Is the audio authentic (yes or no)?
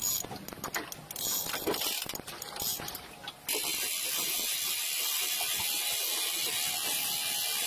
yes